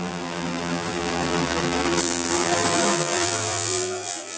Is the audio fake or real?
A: fake